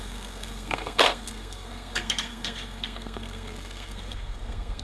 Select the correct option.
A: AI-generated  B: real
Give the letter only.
A